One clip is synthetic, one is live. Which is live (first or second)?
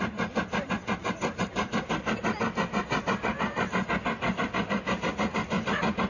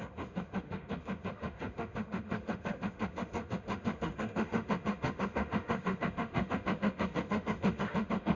first